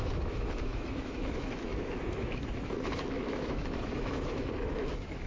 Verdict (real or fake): fake